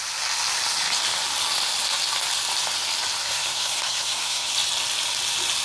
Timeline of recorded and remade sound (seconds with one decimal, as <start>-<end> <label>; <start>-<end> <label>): 0.0-3.2 recorded; 3.2-4.5 remade; 4.5-5.6 recorded

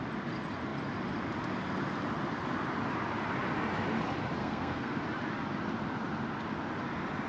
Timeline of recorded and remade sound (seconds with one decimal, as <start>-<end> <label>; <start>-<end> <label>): 0.0-4.4 recorded; 4.4-5.0 remade; 5.0-7.3 recorded

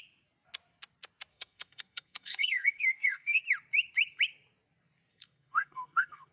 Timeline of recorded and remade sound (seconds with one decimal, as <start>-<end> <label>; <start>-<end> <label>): 0.0-1.3 recorded; 1.3-3.4 remade; 3.4-5.1 recorded; 5.1-6.3 remade